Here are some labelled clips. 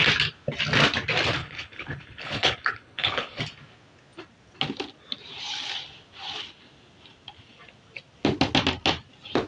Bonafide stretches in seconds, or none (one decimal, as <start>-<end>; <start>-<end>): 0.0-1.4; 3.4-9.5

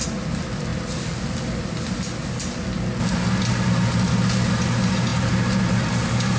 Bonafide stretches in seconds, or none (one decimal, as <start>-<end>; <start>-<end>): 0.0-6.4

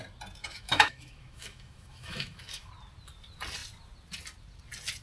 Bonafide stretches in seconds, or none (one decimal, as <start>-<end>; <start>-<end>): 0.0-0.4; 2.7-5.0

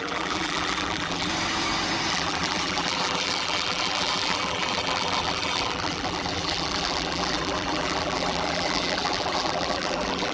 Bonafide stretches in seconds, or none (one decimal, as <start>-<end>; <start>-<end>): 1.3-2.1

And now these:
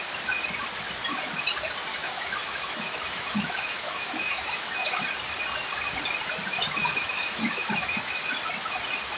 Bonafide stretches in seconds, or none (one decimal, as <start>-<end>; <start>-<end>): 0.0-1.9; 5.0-6.8; 8.3-9.2

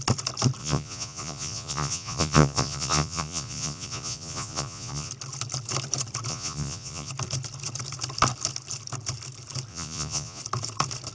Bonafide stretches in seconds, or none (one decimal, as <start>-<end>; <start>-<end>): 0.0-0.6; 5.1-6.3; 7.1-9.7; 10.4-11.1